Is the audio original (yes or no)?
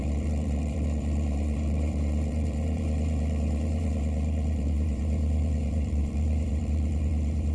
no